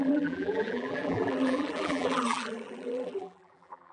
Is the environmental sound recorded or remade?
remade